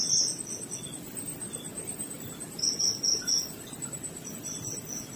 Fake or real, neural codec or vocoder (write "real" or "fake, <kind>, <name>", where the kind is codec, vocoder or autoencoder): real